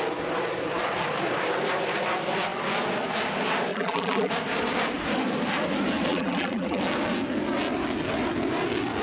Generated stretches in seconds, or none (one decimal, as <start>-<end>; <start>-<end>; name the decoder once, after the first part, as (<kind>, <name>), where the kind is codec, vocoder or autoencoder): 3.7-4.3 (vocoder, BigVGAN v2); 6.1-6.8